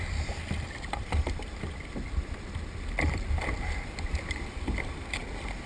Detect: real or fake real